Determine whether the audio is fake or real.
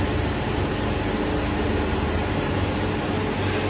real